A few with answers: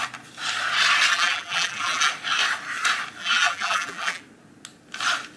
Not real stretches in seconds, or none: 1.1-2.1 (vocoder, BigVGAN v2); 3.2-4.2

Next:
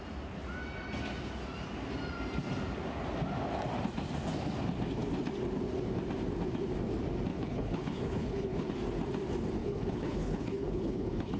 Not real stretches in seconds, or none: 7.3-8.7 (codec, HILCodec); 9.6-11.4

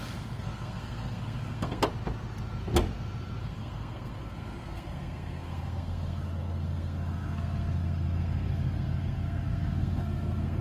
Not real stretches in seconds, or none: 0.0-1.8 (codec, SNAC); 3.4-10.6